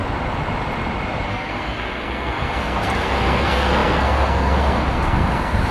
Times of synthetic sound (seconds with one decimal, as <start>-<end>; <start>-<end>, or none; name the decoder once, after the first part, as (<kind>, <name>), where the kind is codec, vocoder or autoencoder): 1.3-5.7 (codec, SNAC)